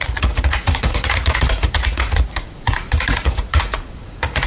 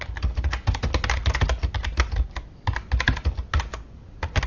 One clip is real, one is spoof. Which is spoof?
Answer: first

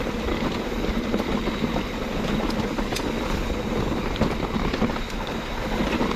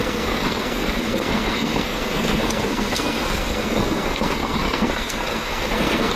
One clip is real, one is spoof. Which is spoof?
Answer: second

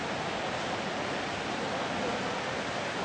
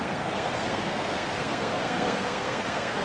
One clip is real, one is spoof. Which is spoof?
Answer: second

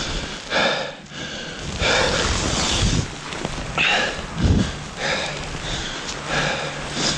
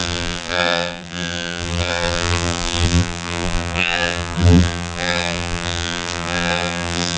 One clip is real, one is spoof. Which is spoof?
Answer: second